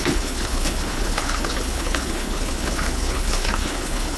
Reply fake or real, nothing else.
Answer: fake